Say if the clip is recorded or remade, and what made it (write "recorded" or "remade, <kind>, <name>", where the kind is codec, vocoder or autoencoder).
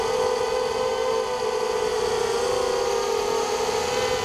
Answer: recorded